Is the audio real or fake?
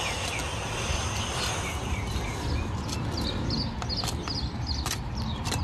real